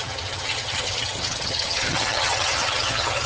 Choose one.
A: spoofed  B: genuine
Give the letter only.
A